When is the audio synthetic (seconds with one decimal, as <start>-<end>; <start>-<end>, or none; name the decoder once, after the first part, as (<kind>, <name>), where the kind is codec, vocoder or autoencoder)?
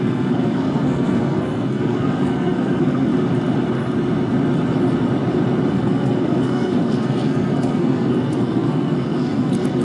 0.0-3.1 (codec, SNAC); 5.7-9.8